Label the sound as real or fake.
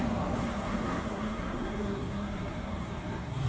fake